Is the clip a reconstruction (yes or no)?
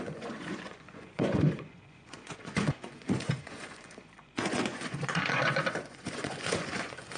yes